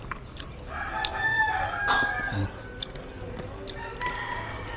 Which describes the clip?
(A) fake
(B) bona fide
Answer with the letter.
B